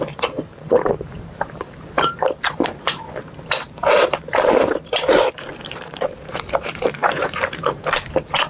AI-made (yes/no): yes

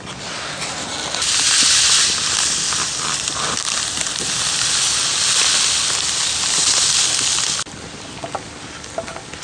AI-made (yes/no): no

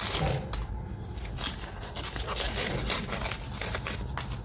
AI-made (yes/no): no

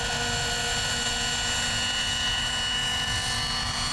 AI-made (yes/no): no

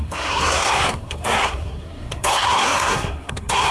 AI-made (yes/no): yes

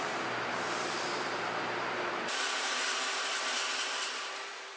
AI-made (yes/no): yes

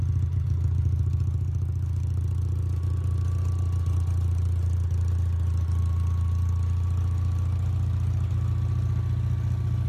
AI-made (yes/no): no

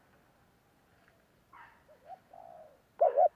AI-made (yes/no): no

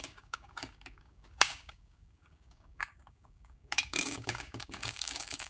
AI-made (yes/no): yes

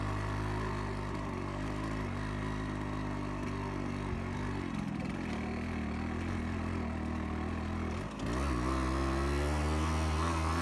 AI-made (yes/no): no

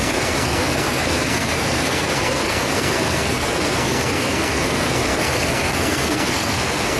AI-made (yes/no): yes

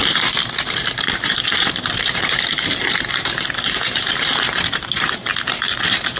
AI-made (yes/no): yes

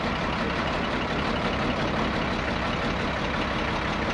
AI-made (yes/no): yes